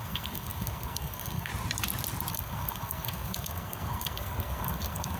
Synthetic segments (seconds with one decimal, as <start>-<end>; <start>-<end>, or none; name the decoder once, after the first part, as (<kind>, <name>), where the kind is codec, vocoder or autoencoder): 0.0-1.5 (codec, SNAC); 2.3-5.2